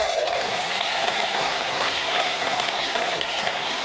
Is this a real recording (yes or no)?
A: no